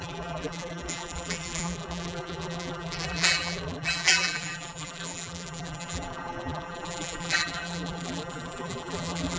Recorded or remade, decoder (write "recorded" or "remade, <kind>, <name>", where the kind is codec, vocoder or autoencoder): remade, vocoder, BigVGAN v2